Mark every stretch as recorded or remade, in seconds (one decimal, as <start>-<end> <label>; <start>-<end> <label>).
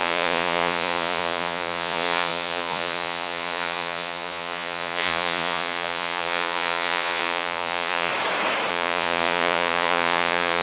0.0-8.1 remade; 8.1-8.7 recorded; 8.7-10.6 remade